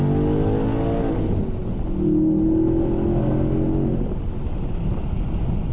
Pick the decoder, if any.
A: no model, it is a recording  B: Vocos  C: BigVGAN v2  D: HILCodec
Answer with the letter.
A